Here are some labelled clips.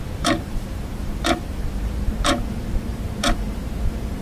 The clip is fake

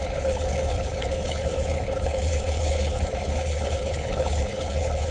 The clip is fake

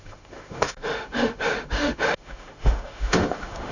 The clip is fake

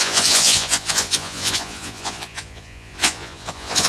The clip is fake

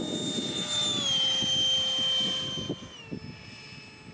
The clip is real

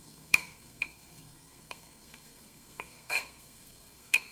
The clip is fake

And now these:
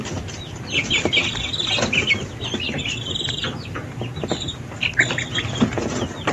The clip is real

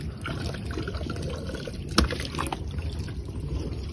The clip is real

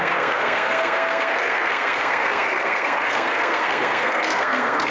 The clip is fake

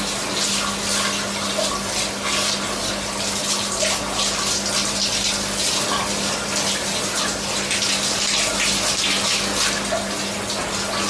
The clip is real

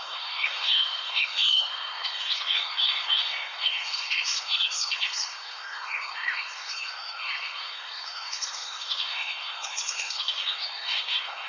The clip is fake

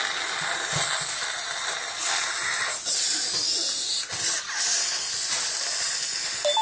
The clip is real